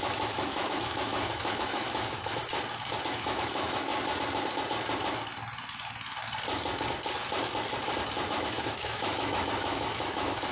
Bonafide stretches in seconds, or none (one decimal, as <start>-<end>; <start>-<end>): 2.4-3.1; 3.9-8.3